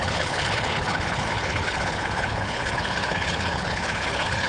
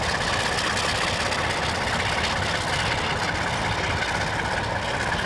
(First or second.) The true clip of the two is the second